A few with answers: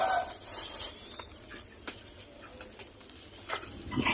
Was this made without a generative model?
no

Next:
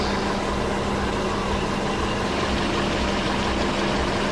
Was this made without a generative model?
yes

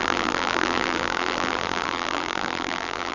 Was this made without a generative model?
no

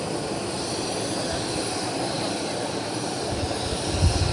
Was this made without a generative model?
no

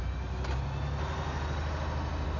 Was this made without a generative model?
yes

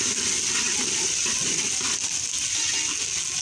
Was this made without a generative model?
yes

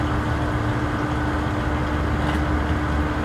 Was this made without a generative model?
yes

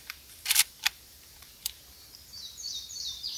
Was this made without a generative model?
no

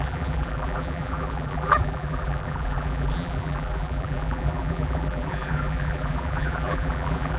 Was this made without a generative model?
no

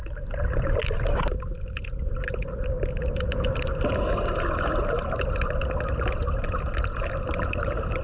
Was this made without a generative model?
yes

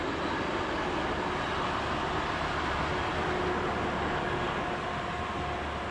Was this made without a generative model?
yes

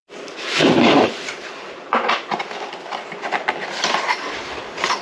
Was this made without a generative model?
no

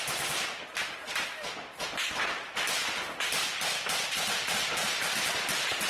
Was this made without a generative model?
no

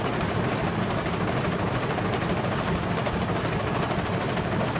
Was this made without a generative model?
yes